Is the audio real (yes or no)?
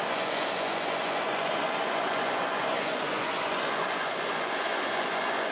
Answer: no